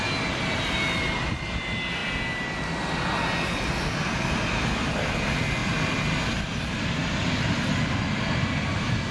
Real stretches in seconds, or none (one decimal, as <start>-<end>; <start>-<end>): 0.0-9.1